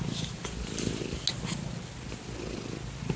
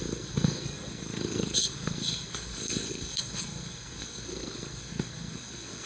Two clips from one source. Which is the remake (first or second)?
second